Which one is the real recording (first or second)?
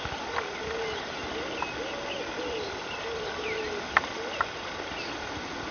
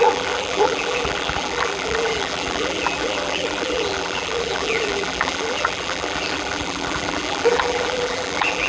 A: first